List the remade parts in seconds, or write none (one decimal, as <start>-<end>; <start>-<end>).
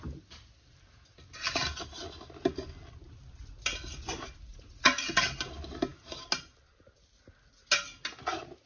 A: 4.5-5.2